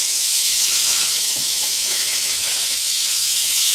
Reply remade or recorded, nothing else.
remade